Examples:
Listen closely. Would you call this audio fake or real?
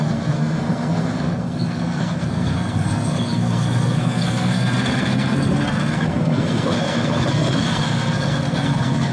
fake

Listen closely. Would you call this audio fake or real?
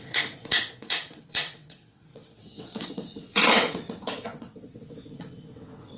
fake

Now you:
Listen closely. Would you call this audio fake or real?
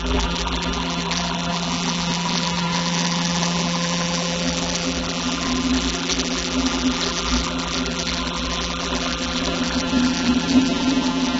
fake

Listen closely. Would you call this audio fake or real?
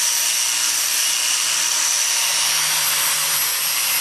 real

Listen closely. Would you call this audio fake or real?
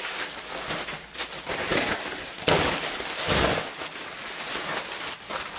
real